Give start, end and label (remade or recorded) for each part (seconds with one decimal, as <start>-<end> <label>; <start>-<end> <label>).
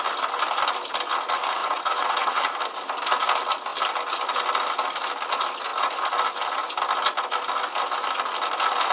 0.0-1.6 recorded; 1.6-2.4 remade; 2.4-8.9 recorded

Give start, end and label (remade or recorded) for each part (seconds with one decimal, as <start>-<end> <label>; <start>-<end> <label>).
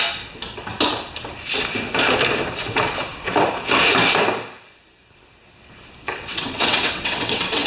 0.0-6.0 recorded; 6.0-7.7 remade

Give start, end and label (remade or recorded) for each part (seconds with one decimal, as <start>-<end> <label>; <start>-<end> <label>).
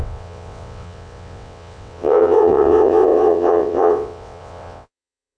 0.0-5.4 remade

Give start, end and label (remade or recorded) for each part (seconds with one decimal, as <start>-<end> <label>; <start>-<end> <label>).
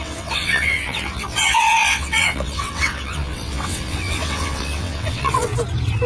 0.0-5.5 remade; 5.5-6.1 recorded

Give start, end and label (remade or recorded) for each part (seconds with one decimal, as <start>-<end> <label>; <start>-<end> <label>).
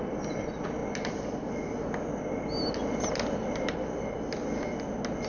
0.0-5.3 recorded